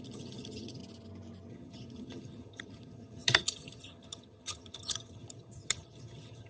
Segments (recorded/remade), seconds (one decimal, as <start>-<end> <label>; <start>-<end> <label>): 0.0-0.8 remade; 0.8-1.5 recorded; 1.5-6.5 remade